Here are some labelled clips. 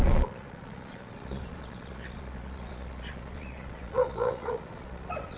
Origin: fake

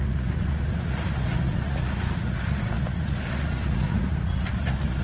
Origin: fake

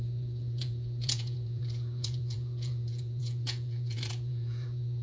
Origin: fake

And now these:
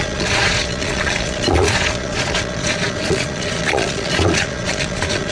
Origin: fake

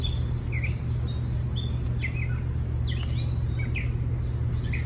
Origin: real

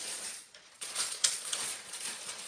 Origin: fake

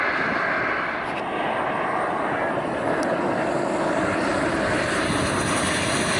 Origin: real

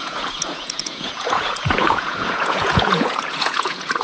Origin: fake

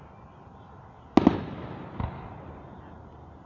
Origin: real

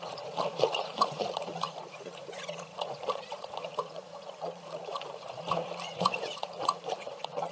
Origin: fake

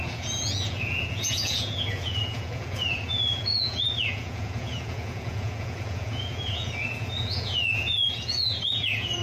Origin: fake